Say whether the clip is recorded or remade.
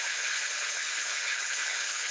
remade